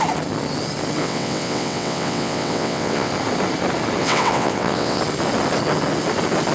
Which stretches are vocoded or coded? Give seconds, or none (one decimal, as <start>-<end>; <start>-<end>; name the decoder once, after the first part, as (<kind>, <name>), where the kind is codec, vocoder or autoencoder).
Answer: 1.0-3.1 (vocoder, WaveNeXt); 4.0-5.0